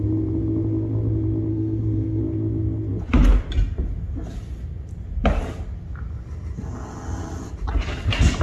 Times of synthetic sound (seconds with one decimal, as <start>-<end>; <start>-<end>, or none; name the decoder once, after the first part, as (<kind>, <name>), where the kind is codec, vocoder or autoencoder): 1.5-2.2 (codec, SNAC)